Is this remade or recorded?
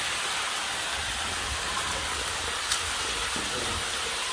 recorded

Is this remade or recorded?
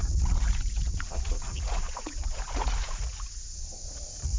remade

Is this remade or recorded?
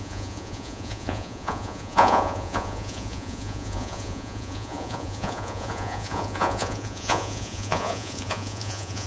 remade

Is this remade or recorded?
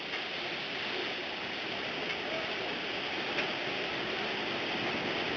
recorded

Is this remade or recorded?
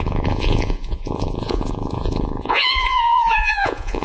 remade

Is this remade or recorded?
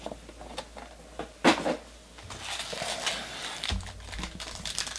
recorded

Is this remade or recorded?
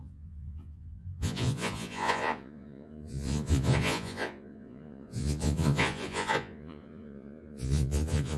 remade